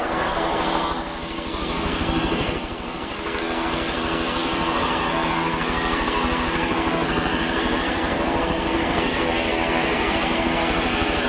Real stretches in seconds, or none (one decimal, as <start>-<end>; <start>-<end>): none